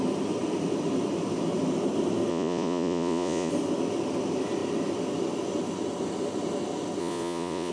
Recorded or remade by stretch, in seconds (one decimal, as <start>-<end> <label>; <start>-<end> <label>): 0.0-2.3 recorded; 2.3-3.5 remade; 3.5-7.0 recorded; 7.0-7.7 remade